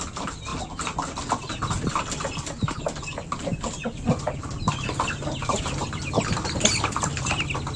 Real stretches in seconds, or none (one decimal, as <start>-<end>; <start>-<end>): 0.0-7.8